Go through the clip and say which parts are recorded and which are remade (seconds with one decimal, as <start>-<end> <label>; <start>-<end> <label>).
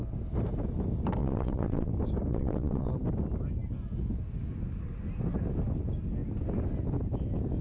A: 0.0-1.2 recorded; 1.2-1.9 remade; 1.9-2.3 recorded; 2.3-2.9 remade; 2.9-7.6 recorded